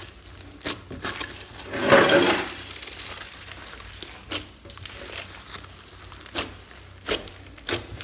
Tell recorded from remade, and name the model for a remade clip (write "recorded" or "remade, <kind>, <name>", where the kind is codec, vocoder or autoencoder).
recorded